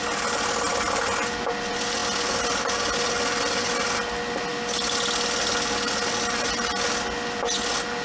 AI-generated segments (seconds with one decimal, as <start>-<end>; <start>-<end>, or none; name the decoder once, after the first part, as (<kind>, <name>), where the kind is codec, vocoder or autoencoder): none